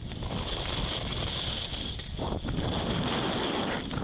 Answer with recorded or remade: recorded